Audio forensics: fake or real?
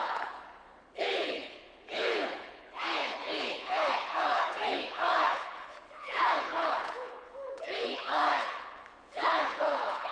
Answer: fake